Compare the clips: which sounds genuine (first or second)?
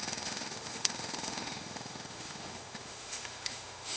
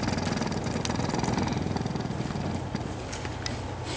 second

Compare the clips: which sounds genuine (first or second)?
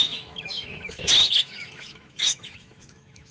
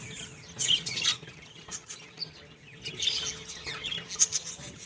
second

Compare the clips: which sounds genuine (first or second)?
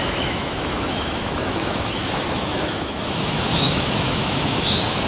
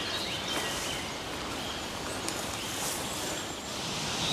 second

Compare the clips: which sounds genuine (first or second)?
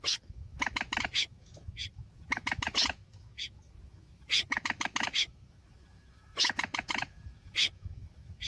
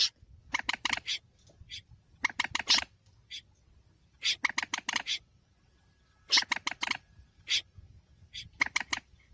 second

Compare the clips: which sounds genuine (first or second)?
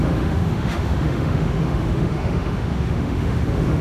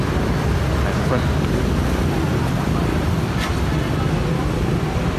second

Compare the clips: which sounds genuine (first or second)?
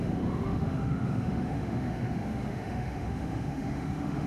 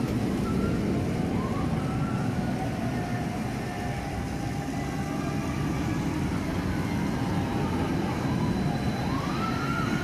second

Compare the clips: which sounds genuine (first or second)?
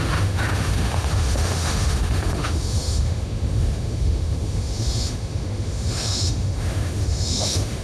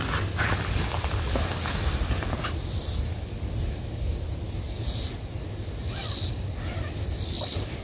second